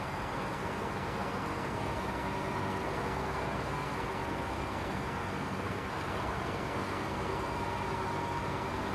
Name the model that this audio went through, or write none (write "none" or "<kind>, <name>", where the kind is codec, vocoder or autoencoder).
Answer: codec, SNAC